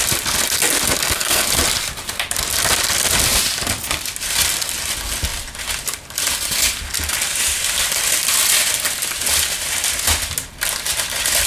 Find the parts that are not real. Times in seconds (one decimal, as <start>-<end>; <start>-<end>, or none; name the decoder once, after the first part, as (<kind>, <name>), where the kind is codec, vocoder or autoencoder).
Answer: 1.0-1.5 (codec, SNAC)